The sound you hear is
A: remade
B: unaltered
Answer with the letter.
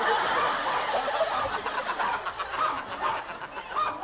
B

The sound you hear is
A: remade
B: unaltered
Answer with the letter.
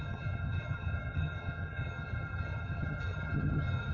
A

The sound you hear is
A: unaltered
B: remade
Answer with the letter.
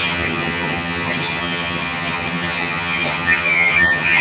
B